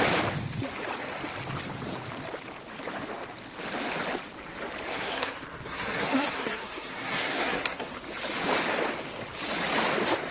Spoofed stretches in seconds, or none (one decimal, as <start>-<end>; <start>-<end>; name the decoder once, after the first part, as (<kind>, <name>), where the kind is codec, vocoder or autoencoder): 4.9-7.9 (codec, SNAC)